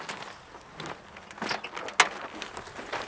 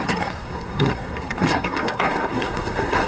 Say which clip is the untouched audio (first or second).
first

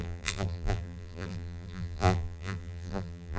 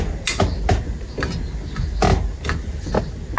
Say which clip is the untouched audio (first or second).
second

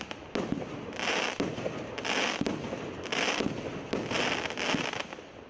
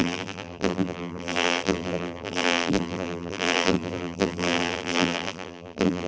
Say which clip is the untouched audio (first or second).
first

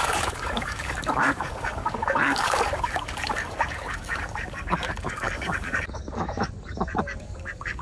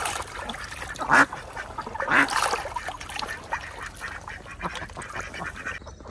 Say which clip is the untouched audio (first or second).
second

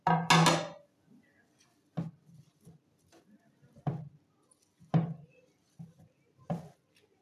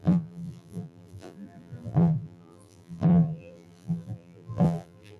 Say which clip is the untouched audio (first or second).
first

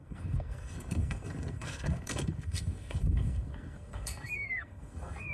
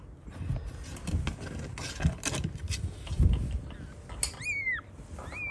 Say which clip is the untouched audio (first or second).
second